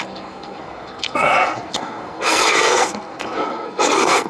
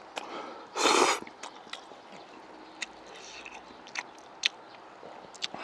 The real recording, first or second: second